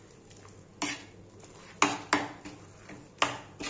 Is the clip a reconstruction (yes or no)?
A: no